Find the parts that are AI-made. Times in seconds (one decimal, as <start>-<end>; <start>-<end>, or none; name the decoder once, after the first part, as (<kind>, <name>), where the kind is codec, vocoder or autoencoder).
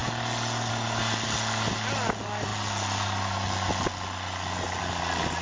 none